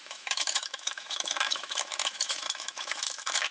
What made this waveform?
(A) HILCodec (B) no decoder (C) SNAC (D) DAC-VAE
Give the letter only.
D